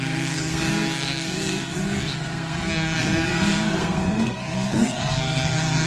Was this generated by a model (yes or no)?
yes